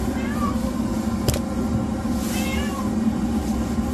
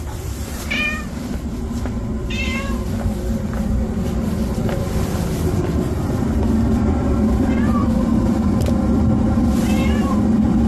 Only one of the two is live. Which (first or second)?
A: first